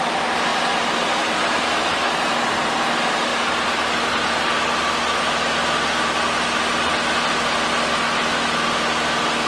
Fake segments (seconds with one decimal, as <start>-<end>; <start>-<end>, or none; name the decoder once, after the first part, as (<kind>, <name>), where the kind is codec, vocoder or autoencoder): none